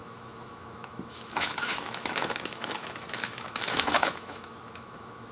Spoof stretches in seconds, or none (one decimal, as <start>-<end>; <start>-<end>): 0.0-5.3